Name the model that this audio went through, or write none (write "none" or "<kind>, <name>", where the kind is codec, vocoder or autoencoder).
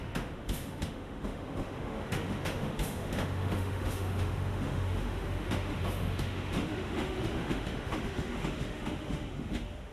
autoencoder, DAC-VAE